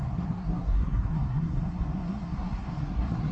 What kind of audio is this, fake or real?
fake